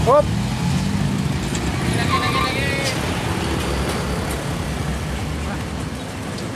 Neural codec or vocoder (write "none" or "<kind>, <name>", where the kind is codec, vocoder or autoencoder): none